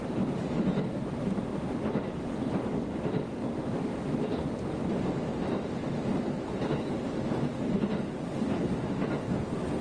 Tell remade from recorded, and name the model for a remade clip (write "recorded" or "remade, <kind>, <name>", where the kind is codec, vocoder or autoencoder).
recorded